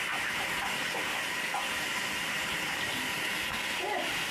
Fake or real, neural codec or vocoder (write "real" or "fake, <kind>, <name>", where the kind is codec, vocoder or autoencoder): real